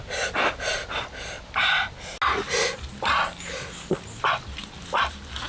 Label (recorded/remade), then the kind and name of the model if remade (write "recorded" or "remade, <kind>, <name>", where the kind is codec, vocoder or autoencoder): recorded